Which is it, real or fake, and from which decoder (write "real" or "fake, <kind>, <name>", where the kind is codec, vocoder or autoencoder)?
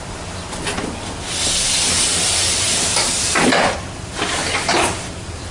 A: real